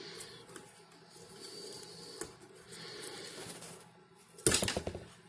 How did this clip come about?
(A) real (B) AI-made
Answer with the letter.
A